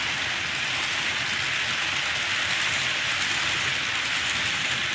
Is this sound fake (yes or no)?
no